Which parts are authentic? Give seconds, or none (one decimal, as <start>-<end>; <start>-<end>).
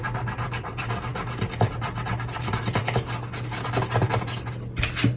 0.0-5.2